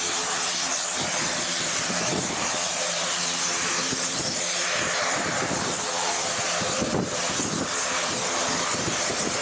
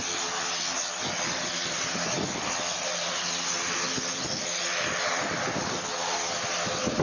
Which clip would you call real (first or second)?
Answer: second